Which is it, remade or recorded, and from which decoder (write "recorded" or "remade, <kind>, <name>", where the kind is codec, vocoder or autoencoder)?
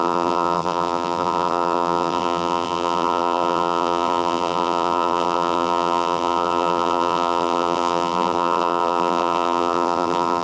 remade, vocoder, BigVGAN v2